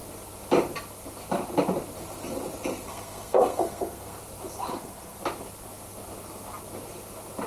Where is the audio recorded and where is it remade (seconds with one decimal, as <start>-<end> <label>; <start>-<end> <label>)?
0.0-2.9 recorded; 2.9-4.2 remade; 4.2-4.7 recorded; 4.7-5.2 remade; 5.2-7.5 recorded